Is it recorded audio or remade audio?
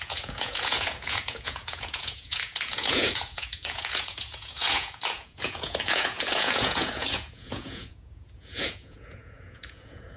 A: remade